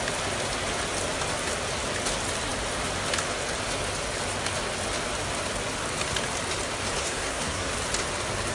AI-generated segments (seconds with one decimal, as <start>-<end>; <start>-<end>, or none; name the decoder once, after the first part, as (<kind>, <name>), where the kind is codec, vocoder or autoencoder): 7.0-7.7 (codec, SNAC)